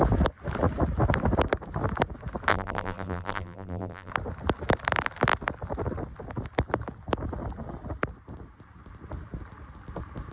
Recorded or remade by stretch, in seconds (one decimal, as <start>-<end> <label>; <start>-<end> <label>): 0.0-2.5 recorded; 2.5-4.1 remade; 4.1-10.3 recorded